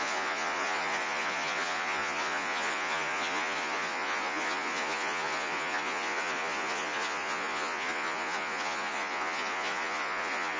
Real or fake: fake